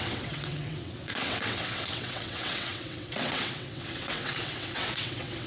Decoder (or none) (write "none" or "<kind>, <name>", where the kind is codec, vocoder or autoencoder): vocoder, WaveNeXt